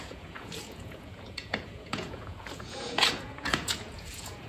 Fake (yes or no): yes